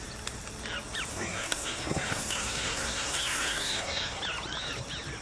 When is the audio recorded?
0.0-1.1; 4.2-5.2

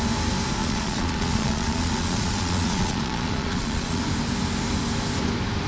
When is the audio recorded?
0.0-0.6; 4.0-5.7

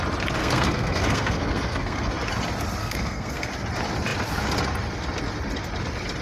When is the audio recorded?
0.0-0.4; 2.1-2.8; 3.5-6.2

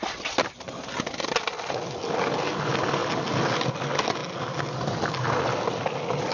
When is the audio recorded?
0.0-6.3

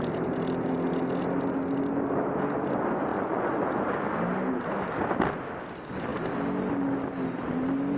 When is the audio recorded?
0.0-3.1; 3.7-8.0